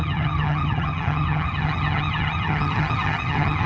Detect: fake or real fake